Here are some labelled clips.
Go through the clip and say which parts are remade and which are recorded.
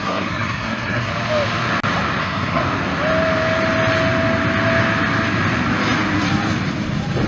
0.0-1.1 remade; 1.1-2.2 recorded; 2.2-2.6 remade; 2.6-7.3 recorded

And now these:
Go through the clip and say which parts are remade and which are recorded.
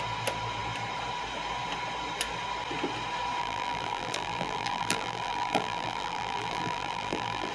0.0-3.4 recorded; 3.4-7.5 remade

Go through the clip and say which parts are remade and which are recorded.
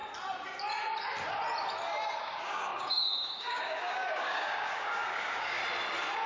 0.0-2.2 recorded; 2.2-5.6 remade; 5.6-6.3 recorded